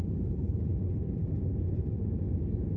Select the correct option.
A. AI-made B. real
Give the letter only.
A